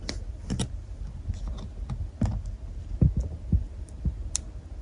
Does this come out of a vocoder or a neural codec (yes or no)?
no